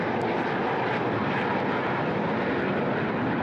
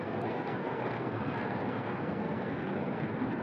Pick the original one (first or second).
first